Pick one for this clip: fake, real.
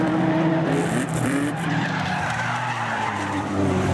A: fake